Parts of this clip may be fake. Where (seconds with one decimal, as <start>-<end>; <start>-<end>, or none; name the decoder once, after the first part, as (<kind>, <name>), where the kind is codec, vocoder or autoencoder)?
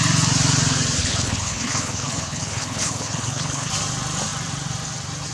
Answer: 1.0-3.7 (codec, HILCodec)